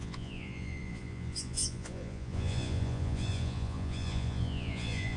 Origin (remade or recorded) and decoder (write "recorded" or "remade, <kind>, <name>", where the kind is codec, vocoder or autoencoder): remade, vocoder, Vocos